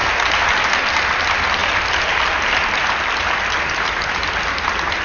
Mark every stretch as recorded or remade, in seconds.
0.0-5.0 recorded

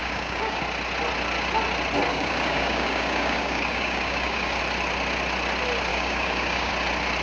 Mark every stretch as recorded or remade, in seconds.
0.0-0.6 remade; 0.6-2.1 recorded; 2.1-4.6 remade; 4.6-5.9 recorded; 5.9-6.7 remade; 6.7-7.2 recorded